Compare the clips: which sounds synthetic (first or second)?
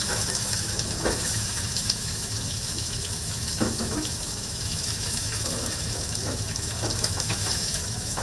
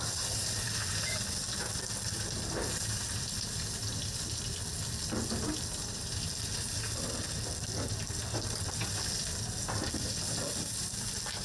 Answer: first